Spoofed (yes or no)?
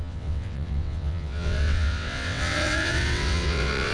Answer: yes